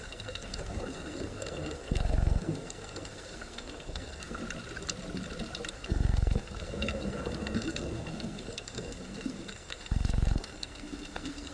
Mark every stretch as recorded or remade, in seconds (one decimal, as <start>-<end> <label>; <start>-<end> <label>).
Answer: 0.0-4.4 remade; 4.4-5.7 recorded; 5.7-11.5 remade